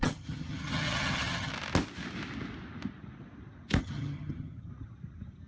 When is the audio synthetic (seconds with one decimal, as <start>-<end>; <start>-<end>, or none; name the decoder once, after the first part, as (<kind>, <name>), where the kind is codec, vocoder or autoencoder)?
0.0-1.5 (vocoder, HiFi-GAN); 3.8-4.7